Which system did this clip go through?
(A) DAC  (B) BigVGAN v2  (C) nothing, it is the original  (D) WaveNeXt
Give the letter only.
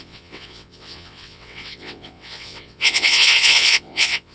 D